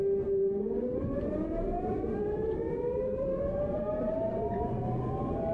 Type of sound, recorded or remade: remade